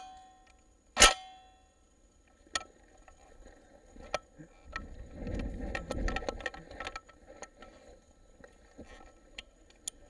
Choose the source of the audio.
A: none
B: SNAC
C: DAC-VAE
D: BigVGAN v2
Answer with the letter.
A